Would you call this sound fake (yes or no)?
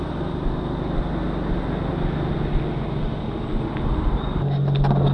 no